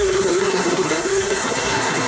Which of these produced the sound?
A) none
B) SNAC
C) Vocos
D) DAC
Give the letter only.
B